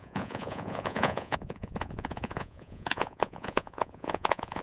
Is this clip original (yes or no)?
no